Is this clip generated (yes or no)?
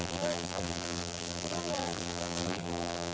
yes